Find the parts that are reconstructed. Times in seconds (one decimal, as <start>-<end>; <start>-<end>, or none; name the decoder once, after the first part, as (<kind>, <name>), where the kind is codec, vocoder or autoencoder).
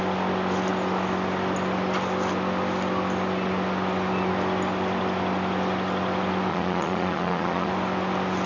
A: 6.5-7.7 (vocoder, Vocos)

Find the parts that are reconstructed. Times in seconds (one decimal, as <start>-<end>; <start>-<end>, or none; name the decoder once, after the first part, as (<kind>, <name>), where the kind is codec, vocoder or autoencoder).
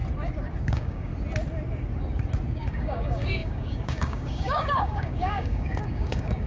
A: 0.6-1.1 (codec, DAC); 2.5-6.5